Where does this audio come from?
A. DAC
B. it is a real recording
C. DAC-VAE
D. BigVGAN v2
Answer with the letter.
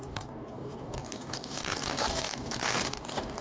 A